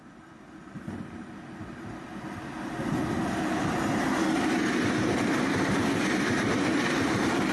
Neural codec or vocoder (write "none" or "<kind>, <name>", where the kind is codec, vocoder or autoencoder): none